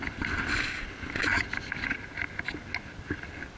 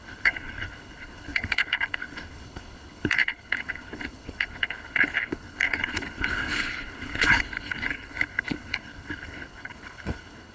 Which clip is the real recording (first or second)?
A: first